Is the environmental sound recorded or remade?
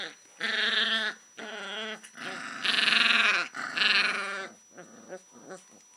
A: recorded